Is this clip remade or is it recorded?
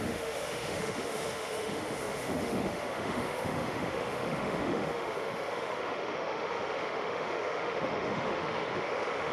remade